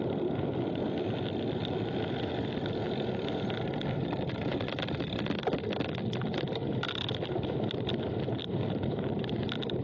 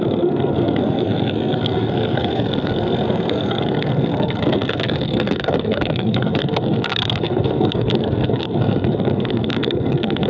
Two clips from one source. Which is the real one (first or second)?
first